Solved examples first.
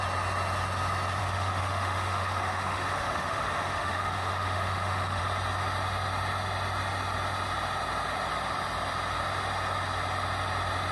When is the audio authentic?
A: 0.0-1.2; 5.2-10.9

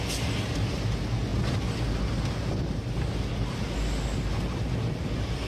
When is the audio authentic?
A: 0.0-5.5

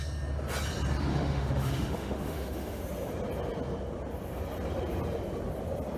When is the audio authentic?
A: 0.0-1.1; 2.8-6.0

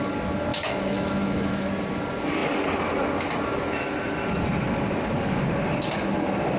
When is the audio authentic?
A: 0.0-0.5; 1.7-6.6

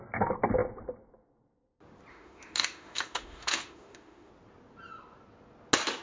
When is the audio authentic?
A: 0.0-2.1; 4.3-6.0

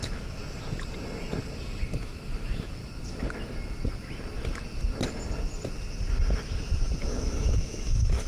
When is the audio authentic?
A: 0.4-1.9; 2.8-7.0